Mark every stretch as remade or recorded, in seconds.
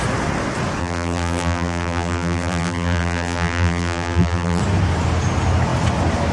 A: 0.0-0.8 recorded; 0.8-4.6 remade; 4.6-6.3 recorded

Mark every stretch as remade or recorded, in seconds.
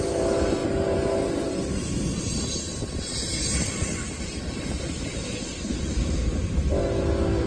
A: 0.0-0.6 remade; 0.6-1.1 recorded; 1.1-3.1 remade; 3.1-4.2 recorded; 4.2-6.8 remade; 6.8-7.5 recorded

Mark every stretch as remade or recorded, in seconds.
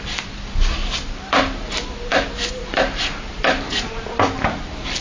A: 0.0-1.3 recorded; 1.3-3.8 remade; 3.8-5.0 recorded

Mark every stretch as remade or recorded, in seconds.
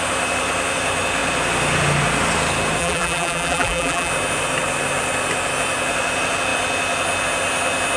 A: 0.0-2.8 recorded; 2.8-4.1 remade; 4.1-8.0 recorded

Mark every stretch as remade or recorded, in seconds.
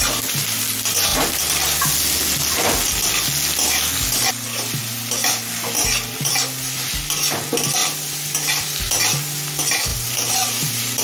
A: 0.0-1.1 recorded; 1.1-1.9 remade; 1.9-7.8 recorded; 7.8-9.0 remade; 9.0-9.9 recorded; 9.9-11.0 remade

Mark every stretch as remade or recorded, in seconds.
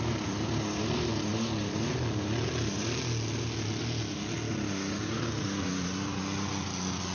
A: 0.0-7.1 recorded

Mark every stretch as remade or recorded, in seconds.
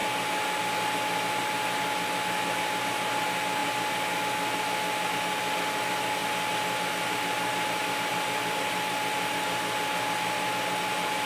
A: 0.0-11.3 recorded